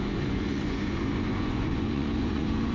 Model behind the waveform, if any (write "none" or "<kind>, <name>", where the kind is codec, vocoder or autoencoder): vocoder, Vocos